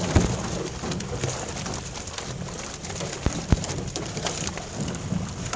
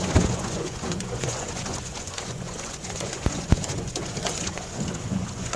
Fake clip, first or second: second